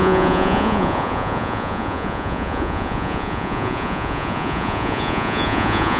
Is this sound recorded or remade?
remade